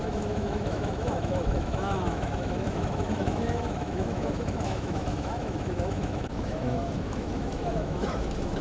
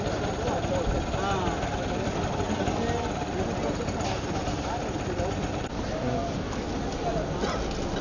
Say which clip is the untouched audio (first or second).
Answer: second